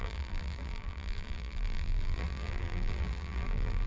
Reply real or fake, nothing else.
fake